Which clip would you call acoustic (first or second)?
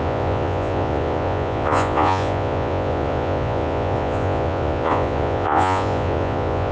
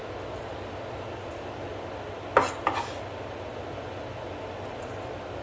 second